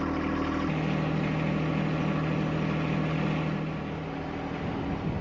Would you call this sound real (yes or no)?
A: yes